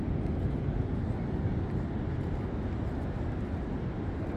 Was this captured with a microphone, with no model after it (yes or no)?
yes